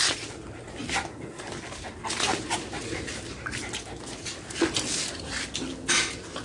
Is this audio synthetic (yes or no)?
no